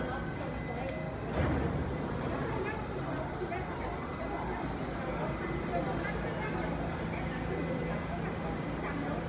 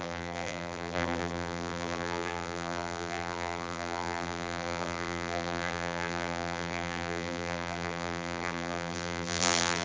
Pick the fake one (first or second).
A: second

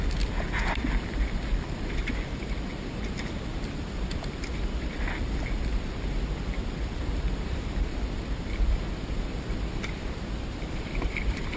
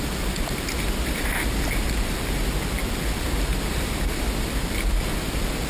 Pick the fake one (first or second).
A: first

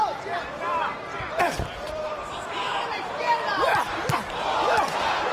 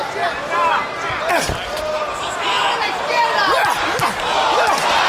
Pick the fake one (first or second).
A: first